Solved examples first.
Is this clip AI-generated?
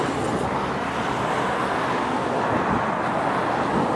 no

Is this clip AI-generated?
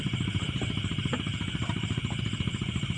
no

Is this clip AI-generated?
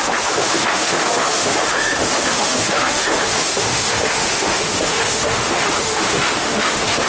yes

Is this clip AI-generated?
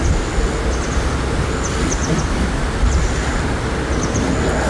no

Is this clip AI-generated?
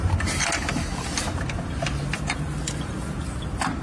no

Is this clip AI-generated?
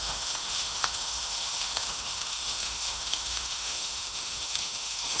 yes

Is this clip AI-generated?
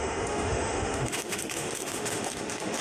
yes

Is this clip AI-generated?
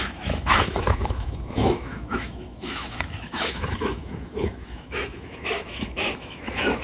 yes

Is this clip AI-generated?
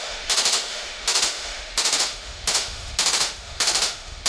yes